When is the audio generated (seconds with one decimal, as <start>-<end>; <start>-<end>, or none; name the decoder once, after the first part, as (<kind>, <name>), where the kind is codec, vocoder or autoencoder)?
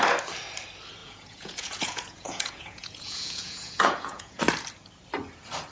1.0-4.4 (vocoder, Vocos)